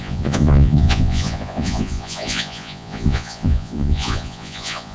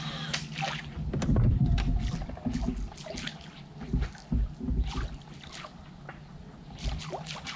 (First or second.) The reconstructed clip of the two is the first